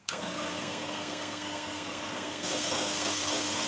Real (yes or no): no